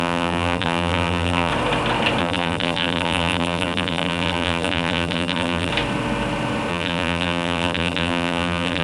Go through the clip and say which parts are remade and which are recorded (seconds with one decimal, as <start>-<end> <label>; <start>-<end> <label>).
0.0-1.5 remade; 1.5-2.2 recorded; 2.2-5.7 remade; 5.7-6.7 recorded; 6.7-8.8 remade

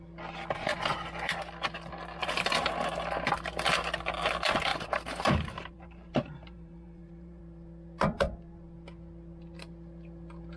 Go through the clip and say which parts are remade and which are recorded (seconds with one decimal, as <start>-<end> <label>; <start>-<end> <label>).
0.0-2.2 recorded; 2.2-2.8 remade; 2.8-4.7 recorded; 4.7-7.4 remade; 7.4-10.6 recorded